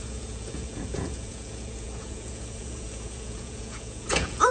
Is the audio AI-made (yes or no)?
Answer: yes